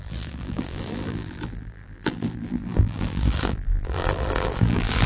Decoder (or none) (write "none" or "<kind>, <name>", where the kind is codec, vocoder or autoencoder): vocoder, BigVGAN v2